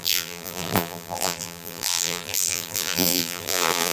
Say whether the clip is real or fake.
fake